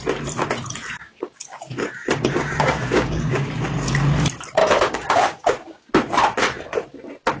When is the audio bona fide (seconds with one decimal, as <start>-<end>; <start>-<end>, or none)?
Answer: 0.0-1.0; 3.5-4.6; 5.9-7.4